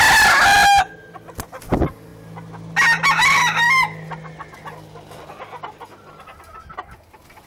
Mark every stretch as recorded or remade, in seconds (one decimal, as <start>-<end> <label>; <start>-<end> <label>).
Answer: 0.0-7.5 recorded